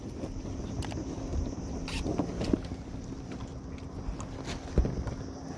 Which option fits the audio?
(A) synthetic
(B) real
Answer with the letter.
B